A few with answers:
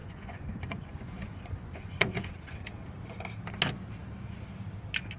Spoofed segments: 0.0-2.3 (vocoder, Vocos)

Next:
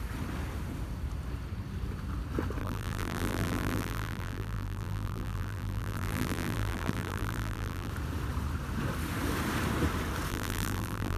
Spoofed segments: 2.6-7.9 (vocoder, BigVGAN v2); 10.3-11.2

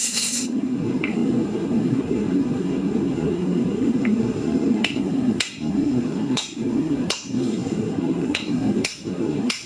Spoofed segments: 0.0-9.7 (codec, SNAC)

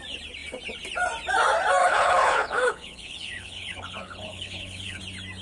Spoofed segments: 1.8-5.0 (codec, HILCodec)

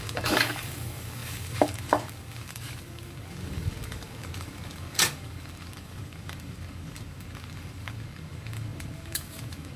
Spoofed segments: 0.0-9.8 (codec, DAC)

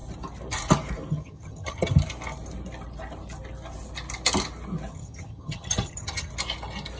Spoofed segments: 1.1-1.9 (vocoder, HiFi-GAN); 4.9-6.3